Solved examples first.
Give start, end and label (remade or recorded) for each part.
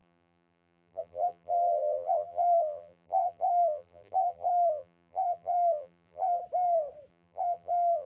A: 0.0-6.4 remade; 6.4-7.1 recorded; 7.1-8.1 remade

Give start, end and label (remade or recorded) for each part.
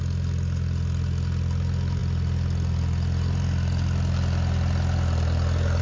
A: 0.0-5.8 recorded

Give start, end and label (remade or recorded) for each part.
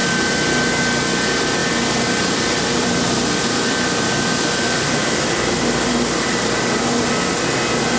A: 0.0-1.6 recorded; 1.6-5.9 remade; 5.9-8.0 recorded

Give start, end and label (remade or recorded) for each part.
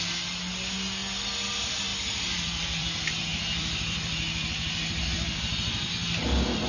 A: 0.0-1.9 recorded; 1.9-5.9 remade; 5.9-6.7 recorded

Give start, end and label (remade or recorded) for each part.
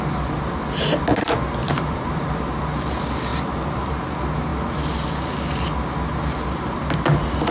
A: 0.0-1.6 recorded; 1.6-2.6 remade; 2.6-3.3 recorded; 3.3-3.9 remade; 3.9-7.5 recorded